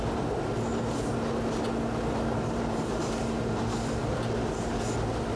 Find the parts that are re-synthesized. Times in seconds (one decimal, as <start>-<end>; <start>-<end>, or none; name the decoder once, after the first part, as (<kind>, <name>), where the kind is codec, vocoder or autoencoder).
2.3-2.9 (vocoder, BigVGAN v2); 4.0-4.7